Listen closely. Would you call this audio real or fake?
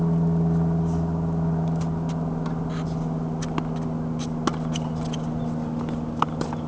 real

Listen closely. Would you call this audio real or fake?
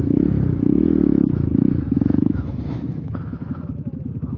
fake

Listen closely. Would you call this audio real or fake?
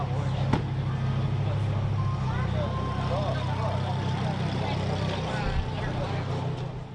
real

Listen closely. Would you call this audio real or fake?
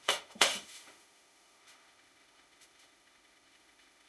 fake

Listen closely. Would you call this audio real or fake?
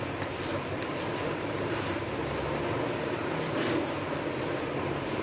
real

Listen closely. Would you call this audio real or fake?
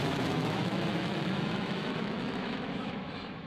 fake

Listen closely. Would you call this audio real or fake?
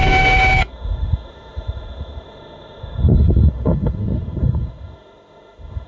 fake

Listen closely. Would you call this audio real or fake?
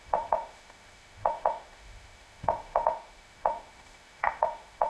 fake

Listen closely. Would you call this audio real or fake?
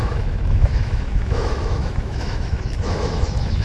fake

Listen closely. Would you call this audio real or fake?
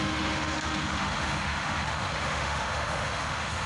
fake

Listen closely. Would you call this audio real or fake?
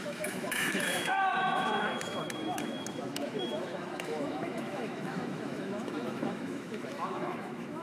fake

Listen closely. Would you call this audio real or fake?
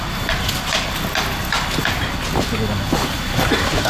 real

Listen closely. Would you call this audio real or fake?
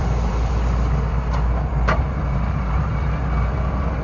real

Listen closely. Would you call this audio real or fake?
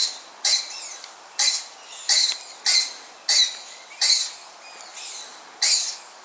real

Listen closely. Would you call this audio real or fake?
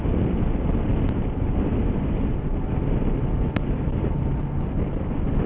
real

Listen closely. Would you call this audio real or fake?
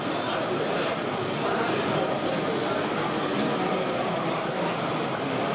real